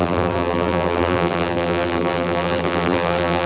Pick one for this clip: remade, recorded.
remade